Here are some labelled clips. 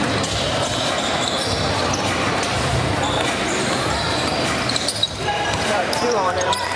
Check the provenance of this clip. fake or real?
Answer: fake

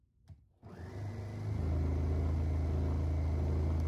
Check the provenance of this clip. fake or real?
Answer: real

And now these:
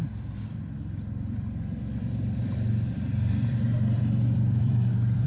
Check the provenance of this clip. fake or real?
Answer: fake